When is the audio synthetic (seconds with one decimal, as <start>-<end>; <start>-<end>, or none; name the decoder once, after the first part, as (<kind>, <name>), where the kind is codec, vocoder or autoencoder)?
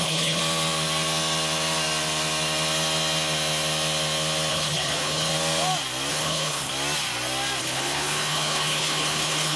0.0-0.4 (codec, HILCodec); 4.5-5.3; 6.1-6.7; 7.6-9.6